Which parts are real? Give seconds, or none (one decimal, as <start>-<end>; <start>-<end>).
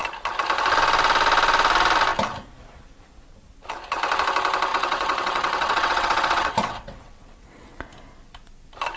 0.0-4.7; 7.9-9.0